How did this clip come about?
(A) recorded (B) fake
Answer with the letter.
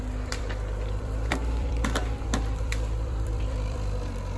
B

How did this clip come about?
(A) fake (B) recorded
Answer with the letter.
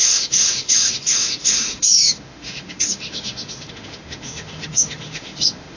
A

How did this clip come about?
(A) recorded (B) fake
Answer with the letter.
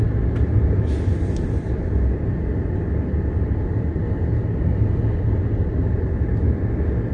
A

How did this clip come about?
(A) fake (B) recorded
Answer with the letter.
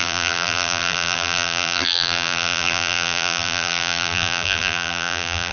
A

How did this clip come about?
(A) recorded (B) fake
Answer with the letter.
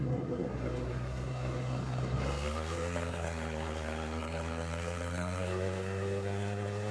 B